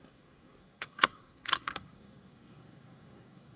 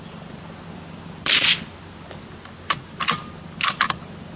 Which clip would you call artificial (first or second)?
first